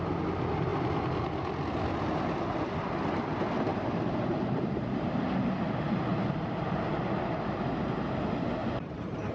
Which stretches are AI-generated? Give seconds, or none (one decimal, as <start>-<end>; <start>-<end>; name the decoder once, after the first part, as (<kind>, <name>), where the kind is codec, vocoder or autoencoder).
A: 3.7-5.2 (vocoder, BigVGAN v2); 6.1-6.9; 8.6-9.3

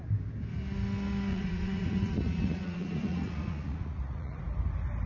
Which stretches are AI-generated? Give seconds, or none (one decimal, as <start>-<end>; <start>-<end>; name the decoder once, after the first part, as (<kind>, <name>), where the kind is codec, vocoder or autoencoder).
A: 1.3-4.4 (vocoder, Vocos)

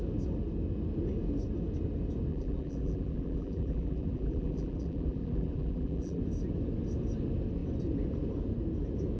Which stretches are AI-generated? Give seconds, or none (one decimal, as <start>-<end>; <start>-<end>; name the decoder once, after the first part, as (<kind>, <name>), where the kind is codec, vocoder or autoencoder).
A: 2.3-6.2 (vocoder, BigVGAN v2)

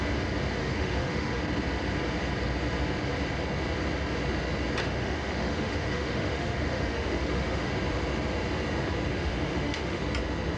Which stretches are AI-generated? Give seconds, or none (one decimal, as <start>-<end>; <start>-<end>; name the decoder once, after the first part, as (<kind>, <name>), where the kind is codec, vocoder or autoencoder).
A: 0.6-1.4 (autoencoder, DAC-VAE); 4.8-7.7; 9.1-10.0

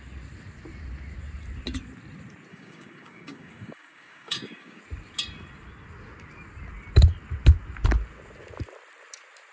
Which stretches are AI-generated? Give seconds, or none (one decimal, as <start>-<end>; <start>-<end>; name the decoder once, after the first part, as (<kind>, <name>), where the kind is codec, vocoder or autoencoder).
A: 2.5-4.8 (codec, DAC)

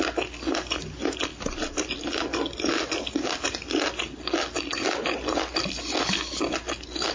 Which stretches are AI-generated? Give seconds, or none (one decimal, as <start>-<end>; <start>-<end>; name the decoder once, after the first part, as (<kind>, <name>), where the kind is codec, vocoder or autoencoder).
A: none